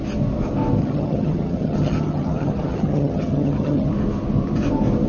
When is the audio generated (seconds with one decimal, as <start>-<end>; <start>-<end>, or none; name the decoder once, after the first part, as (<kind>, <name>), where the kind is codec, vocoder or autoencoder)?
0.8-3.9 (vocoder, HiFi-GAN)